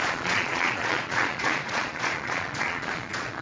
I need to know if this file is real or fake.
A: fake